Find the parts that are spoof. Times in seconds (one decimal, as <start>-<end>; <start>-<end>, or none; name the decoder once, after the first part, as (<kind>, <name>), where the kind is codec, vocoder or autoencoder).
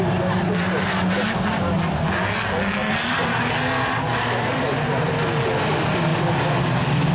none